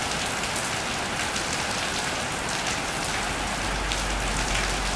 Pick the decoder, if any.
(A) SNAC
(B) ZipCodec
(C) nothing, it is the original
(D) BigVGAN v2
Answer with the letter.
C